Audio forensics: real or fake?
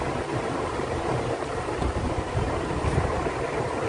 fake